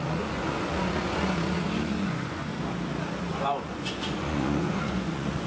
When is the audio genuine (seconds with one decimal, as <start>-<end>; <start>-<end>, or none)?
2.5-3.2